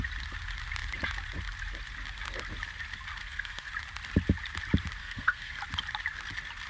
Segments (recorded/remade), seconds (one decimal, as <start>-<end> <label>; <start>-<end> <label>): 0.0-3.2 recorded; 3.2-3.7 remade; 3.7-5.0 recorded; 5.0-5.6 remade; 5.6-6.7 recorded